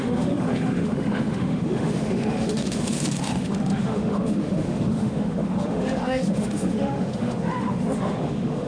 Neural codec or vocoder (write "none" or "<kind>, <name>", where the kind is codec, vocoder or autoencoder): autoencoder, DAC-VAE